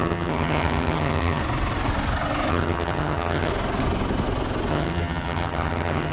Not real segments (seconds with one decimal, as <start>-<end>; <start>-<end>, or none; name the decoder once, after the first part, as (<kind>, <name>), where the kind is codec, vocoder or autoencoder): 0.0-1.4 (vocoder, HiFi-GAN); 2.5-3.5; 4.7-6.1